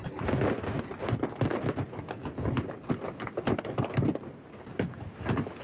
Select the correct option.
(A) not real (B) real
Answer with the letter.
B